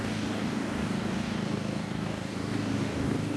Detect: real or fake fake